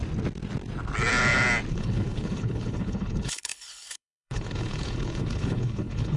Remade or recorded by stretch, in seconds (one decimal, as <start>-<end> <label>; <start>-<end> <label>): 0.0-1.7 recorded; 1.7-6.2 remade